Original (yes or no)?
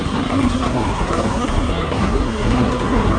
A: no